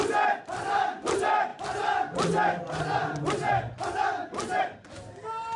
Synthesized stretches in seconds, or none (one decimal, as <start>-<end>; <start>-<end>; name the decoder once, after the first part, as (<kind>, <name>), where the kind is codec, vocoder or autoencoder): none